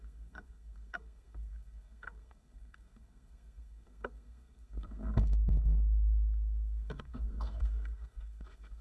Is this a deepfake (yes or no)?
yes